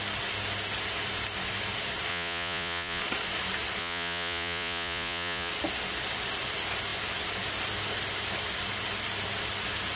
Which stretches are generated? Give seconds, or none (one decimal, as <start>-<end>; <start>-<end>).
2.1-3.0; 3.8-5.5